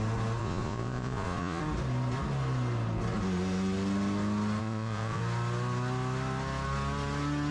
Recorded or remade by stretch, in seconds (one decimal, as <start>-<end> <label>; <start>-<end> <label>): 0.0-0.4 recorded; 0.4-1.6 remade; 1.6-4.6 recorded; 4.6-5.2 remade; 5.2-7.5 recorded